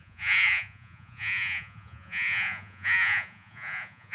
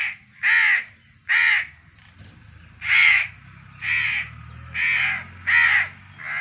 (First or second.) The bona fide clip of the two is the second